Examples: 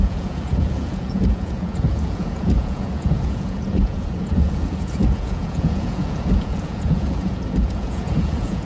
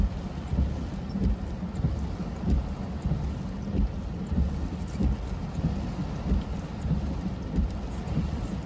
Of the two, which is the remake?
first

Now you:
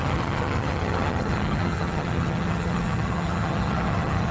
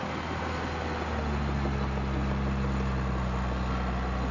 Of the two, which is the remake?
first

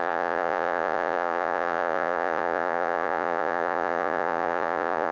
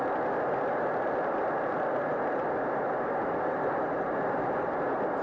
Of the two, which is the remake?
first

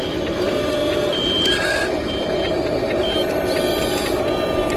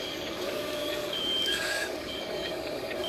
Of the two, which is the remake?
second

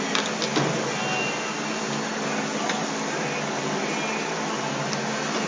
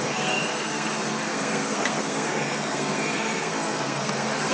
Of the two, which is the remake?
second